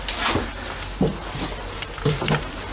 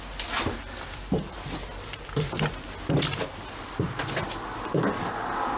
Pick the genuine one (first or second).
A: first